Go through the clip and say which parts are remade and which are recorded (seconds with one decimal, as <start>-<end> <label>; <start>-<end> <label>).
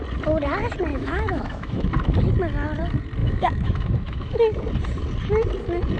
0.0-0.9 recorded; 0.9-1.9 remade; 1.9-3.2 recorded; 3.2-4.4 remade; 4.4-6.0 recorded